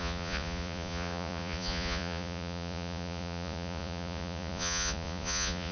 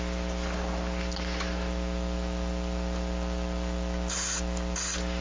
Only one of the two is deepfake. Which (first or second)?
first